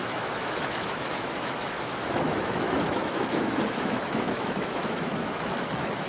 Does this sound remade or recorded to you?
remade